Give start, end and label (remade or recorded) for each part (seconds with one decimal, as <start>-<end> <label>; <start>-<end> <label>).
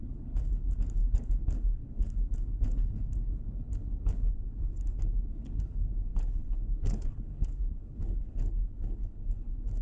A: 0.0-9.8 remade